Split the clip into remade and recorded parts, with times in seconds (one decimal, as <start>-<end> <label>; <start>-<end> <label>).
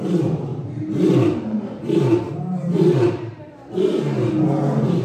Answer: 0.0-0.5 recorded; 0.5-3.5 remade; 3.5-5.0 recorded